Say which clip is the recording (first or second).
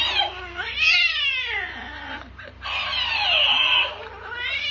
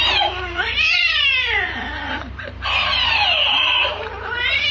first